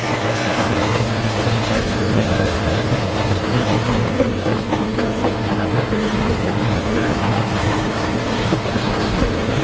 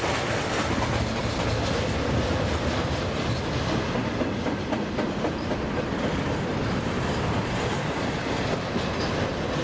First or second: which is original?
second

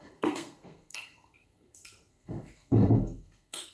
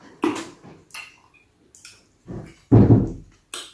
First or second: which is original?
second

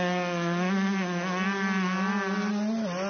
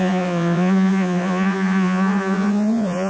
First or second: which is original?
first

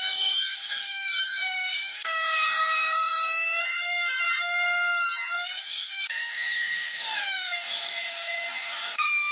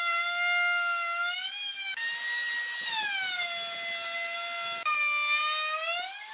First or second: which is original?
second